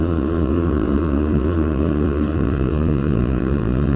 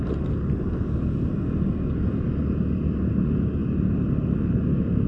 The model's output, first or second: first